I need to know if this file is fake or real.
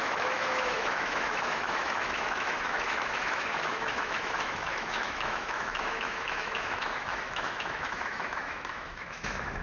fake